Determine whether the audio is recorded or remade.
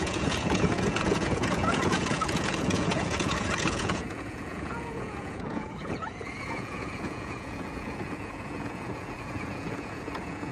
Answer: remade